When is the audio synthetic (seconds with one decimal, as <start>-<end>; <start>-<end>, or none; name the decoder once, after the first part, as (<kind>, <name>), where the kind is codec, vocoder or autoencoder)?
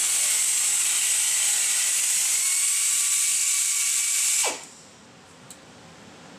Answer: 3.4-4.2 (vocoder, BigVGAN v2)